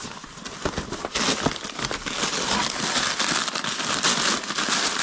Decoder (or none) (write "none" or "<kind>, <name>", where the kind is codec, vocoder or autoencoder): none